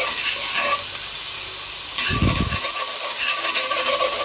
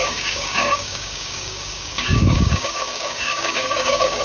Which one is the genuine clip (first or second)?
first